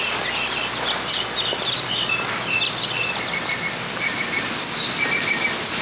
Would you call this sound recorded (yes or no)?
yes